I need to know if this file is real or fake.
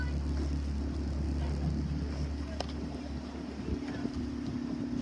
real